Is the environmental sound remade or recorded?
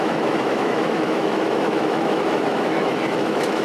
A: remade